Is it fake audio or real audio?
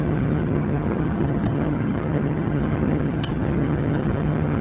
fake